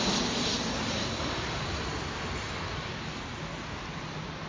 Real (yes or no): yes